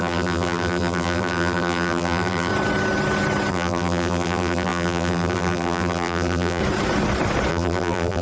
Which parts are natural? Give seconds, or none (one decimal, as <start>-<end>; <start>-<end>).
2.5-3.5; 6.6-7.5